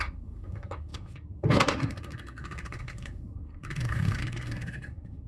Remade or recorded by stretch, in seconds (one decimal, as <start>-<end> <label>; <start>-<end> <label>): 0.0-5.3 remade